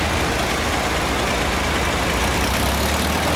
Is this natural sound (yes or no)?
yes